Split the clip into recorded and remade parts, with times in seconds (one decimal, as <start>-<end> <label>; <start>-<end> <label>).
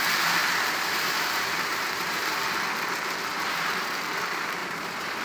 0.0-0.4 recorded; 0.4-2.4 remade; 2.4-3.3 recorded; 3.3-4.0 remade; 4.0-4.6 recorded; 4.6-5.2 remade